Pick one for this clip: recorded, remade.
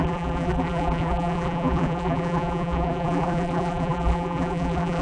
remade